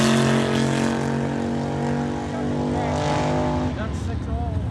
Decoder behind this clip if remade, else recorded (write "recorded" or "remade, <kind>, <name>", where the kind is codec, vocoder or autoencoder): recorded